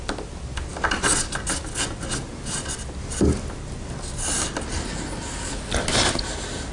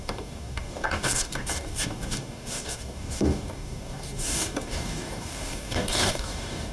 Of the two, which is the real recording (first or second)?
first